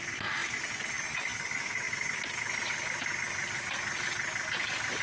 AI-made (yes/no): no